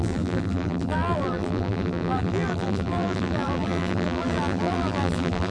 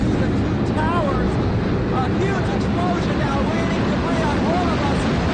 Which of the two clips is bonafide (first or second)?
second